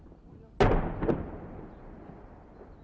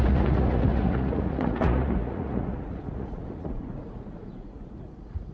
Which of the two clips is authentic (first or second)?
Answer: first